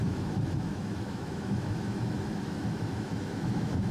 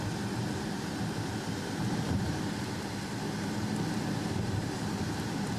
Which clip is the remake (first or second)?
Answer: first